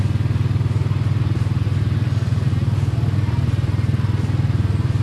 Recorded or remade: recorded